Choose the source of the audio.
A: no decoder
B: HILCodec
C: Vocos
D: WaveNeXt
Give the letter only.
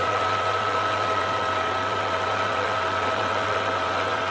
D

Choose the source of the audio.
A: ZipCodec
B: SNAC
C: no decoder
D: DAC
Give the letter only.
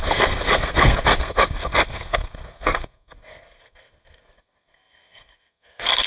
B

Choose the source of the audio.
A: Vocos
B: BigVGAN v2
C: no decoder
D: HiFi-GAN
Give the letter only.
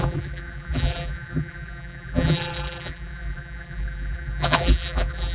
B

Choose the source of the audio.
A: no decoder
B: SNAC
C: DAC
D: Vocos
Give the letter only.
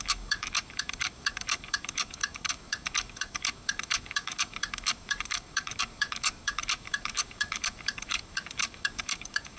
C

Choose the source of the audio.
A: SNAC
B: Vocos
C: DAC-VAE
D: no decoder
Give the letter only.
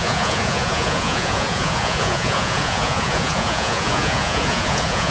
B